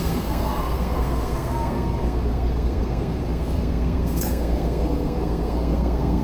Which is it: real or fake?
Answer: fake